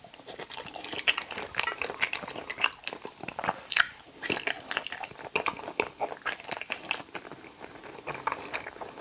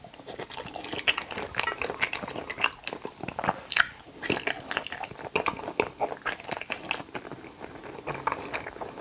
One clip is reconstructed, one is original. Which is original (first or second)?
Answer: second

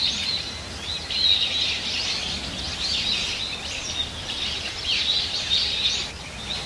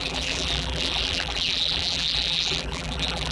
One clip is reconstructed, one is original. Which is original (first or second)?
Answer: first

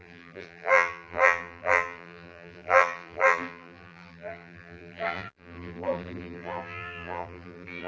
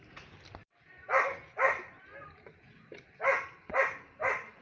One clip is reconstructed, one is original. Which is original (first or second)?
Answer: second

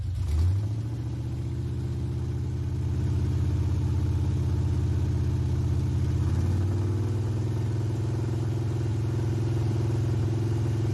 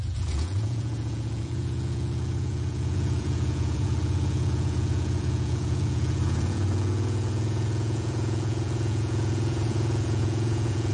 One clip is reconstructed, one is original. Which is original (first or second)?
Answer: first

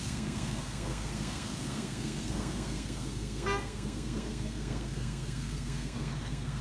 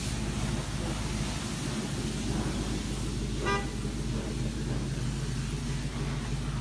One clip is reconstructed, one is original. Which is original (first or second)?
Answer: second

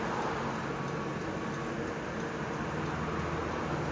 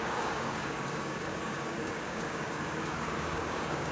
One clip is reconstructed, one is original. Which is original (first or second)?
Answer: first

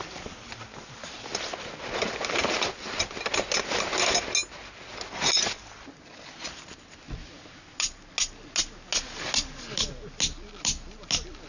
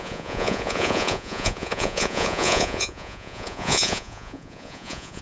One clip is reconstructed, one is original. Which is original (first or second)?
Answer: first